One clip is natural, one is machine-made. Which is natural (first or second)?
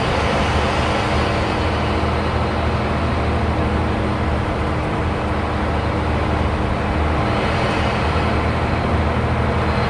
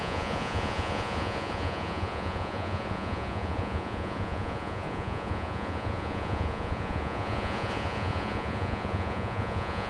first